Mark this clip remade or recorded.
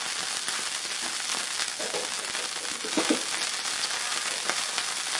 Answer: recorded